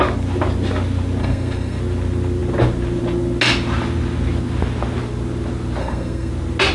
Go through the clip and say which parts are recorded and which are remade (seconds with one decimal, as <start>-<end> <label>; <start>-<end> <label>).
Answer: 0.0-1.2 recorded; 1.2-1.8 remade; 1.8-5.8 recorded; 5.8-6.3 remade; 6.3-6.7 recorded